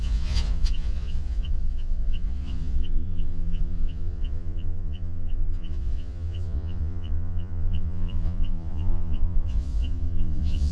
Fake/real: fake